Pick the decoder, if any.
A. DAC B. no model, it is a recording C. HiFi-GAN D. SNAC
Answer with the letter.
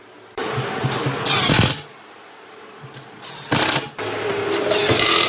B